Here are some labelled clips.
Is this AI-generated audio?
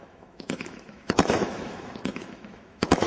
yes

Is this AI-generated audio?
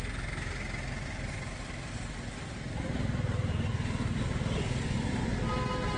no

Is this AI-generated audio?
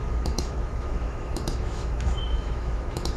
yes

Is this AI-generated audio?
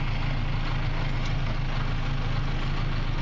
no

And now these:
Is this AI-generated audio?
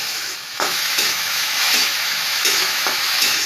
yes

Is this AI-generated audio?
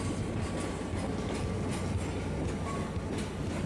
no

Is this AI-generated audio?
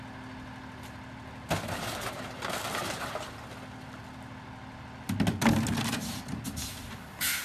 no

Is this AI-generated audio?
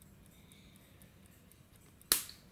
no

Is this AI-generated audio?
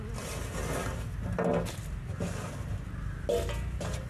no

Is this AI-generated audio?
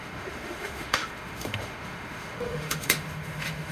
yes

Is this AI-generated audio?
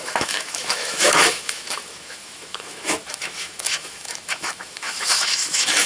yes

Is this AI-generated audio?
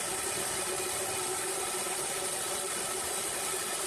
no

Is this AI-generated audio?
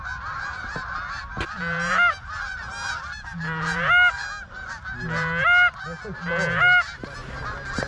no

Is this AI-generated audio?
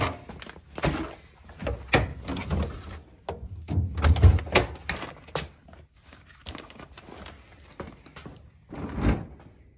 no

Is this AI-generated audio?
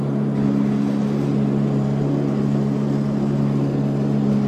no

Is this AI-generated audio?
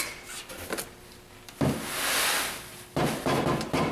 no